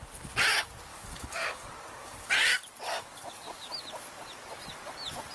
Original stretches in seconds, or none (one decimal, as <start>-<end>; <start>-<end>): 0.0-0.9; 2.3-2.9; 3.7-5.3